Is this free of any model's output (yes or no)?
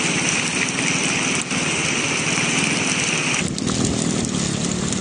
yes